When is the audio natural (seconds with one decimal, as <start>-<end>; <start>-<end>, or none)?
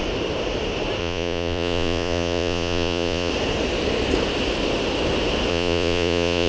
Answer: 0.0-1.0; 3.3-5.5